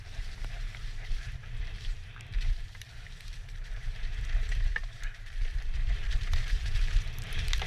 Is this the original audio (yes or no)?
no